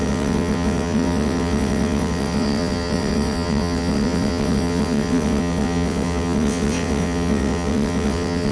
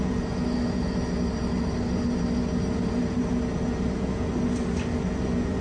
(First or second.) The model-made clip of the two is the first